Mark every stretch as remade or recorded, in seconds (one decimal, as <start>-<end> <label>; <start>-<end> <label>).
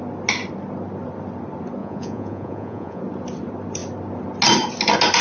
0.0-1.8 recorded; 1.8-3.0 remade; 3.0-5.2 recorded